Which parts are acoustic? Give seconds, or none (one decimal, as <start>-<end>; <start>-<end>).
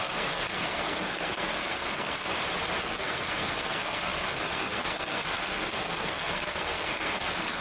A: 2.3-2.8